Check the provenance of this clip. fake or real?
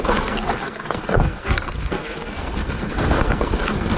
fake